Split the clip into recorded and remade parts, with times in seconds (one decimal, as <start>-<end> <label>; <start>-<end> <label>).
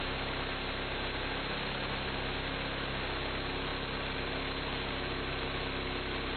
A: 0.0-6.4 recorded